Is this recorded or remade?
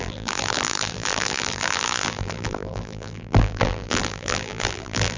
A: remade